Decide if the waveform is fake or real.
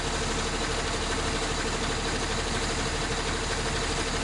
real